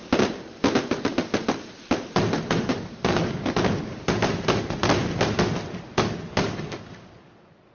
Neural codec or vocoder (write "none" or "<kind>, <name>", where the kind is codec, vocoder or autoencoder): none